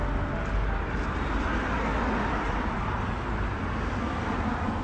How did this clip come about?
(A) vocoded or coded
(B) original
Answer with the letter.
B